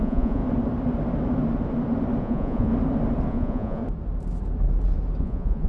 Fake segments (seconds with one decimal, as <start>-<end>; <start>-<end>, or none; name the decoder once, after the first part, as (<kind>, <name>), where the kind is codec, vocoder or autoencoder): 0.0-0.4 (vocoder, Vocos); 2.2-2.7; 3.3-3.8; 5.2-5.7